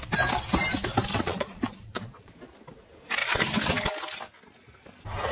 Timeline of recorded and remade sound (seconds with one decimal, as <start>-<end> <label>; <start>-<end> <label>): 0.0-1.1 recorded; 1.1-2.3 remade; 2.3-5.3 recorded